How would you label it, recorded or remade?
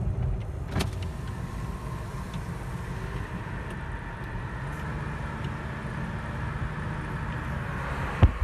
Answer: recorded